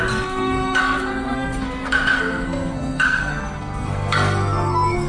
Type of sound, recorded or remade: remade